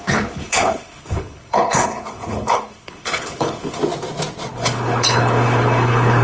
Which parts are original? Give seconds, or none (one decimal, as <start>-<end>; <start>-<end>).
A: 3.8-4.5